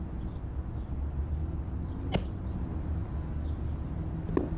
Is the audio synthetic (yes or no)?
no